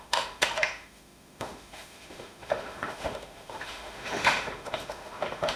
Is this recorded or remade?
remade